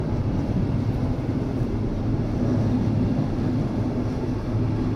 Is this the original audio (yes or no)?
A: yes